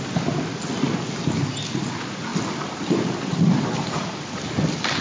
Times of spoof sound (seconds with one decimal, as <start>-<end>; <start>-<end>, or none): none